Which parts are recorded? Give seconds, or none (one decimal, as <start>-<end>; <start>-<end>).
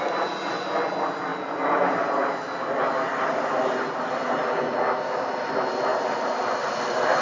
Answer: 0.0-7.2